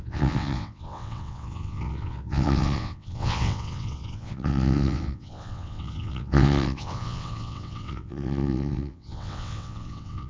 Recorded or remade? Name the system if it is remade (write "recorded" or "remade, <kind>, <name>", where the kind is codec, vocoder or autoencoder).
remade, vocoder, WaveNeXt